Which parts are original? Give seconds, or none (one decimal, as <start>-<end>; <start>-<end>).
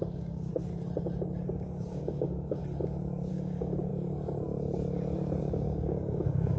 0.5-1.5; 2.6-3.3; 3.9-5.4